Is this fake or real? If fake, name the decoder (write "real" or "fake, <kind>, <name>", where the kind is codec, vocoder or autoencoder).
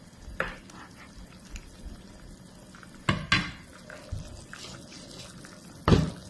real